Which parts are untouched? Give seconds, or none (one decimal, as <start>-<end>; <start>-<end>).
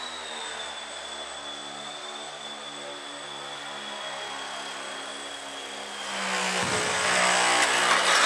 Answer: 0.0-8.3